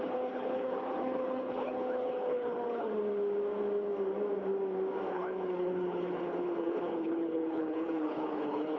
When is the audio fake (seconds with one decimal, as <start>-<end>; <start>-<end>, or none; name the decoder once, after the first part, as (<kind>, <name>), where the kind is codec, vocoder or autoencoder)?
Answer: 0.0-2.9 (codec, HILCodec); 5.1-8.8